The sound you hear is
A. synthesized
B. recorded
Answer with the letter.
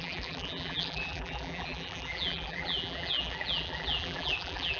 A